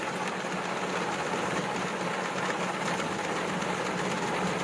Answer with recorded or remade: recorded